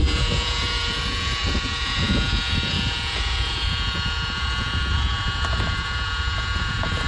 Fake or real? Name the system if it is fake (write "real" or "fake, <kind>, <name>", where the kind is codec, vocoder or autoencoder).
fake, vocoder, Vocos